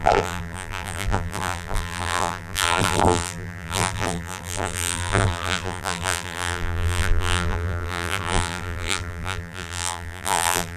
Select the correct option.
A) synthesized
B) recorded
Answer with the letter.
A